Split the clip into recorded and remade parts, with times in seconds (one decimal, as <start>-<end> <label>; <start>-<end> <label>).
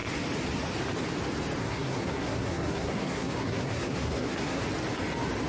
0.0-1.6 recorded; 1.6-4.6 remade; 4.6-5.5 recorded